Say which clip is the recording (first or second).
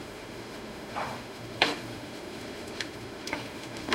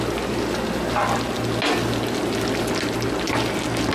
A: second